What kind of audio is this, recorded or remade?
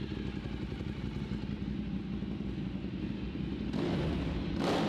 recorded